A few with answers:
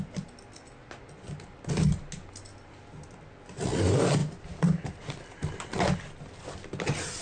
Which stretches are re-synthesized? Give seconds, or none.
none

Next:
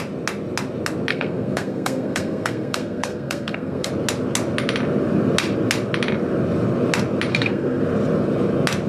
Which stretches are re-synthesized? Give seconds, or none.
1.1-3.9 (codec, SNAC); 7.3-7.8

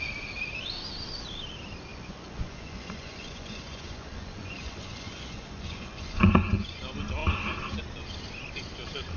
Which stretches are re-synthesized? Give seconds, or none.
1.9-6.8 (vocoder, Vocos)